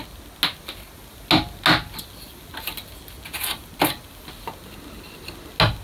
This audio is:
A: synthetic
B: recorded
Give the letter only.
B